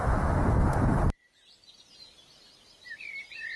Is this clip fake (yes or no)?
yes